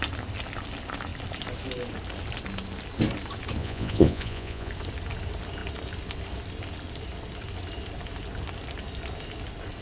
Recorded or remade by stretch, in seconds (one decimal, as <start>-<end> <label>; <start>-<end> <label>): 0.0-3.6 recorded; 3.6-4.7 remade; 4.7-9.8 recorded